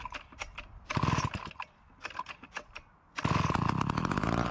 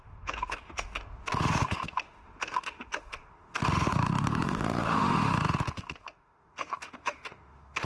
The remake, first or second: second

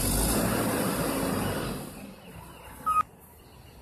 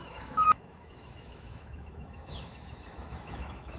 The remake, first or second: second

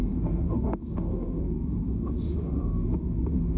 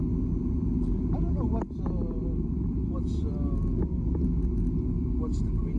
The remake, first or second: first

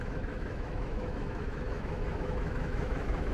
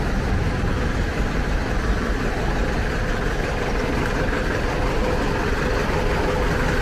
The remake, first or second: first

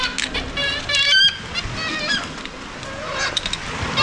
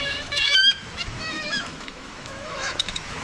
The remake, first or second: second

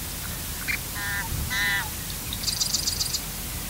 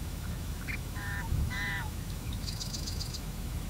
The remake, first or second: second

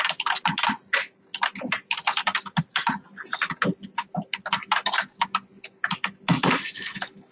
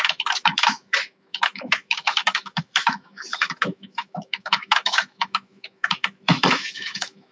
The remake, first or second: second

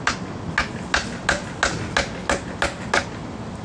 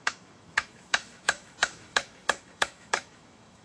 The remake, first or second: second